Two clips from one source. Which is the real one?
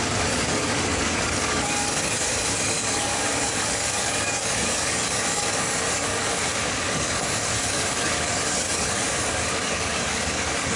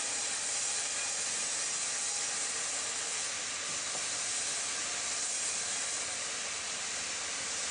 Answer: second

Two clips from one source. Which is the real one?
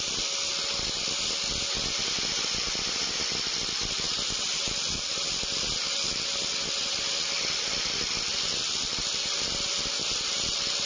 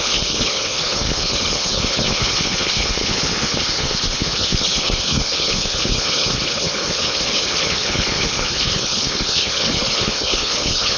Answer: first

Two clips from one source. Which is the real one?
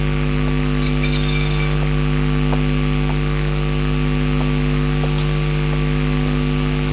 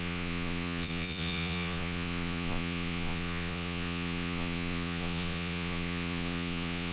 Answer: first